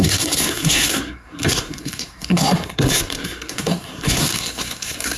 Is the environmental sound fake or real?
fake